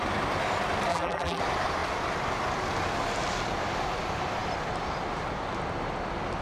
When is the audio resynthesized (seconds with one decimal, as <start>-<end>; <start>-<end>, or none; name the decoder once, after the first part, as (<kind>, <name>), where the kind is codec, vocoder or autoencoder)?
0.9-1.4 (vocoder, BigVGAN v2)